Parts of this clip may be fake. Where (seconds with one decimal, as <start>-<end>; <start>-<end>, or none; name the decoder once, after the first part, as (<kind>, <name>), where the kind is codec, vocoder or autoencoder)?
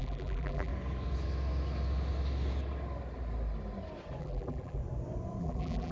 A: 0.0-0.7 (vocoder, BigVGAN v2); 4.2-4.8; 5.4-5.9